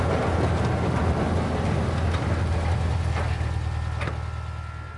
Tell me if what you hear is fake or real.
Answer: real